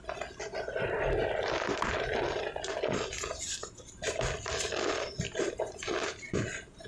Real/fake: real